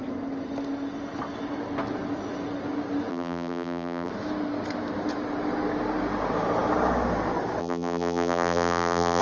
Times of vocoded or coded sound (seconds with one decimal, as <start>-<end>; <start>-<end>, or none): 3.1-4.1; 7.6-9.2